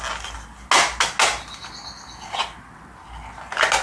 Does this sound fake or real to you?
real